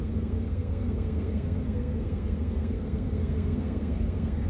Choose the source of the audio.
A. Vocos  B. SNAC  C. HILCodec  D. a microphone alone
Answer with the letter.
B